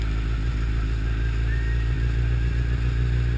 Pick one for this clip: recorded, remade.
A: recorded